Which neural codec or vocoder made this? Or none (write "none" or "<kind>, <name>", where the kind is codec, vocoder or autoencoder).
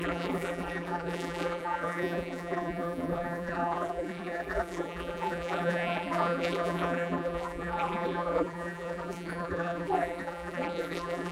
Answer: vocoder, BigVGAN v2